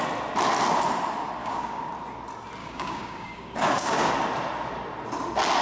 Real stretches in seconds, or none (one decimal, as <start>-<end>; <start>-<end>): 0.0-1.4; 1.9-2.6; 4.1-5.6